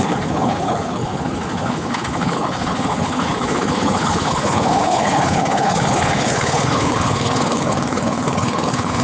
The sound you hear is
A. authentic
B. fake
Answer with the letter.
B